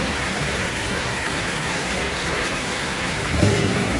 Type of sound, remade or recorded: remade